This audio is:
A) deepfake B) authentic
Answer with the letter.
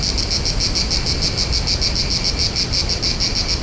B